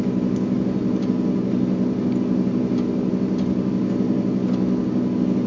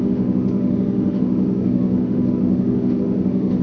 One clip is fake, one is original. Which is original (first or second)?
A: first